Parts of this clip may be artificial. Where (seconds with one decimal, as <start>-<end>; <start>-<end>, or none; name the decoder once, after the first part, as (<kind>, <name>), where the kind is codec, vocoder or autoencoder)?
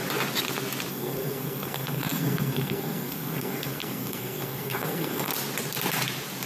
0.9-5.3 (codec, SNAC)